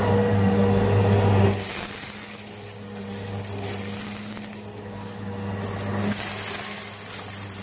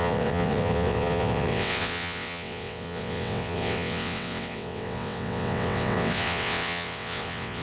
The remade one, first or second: second